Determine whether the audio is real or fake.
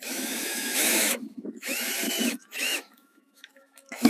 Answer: fake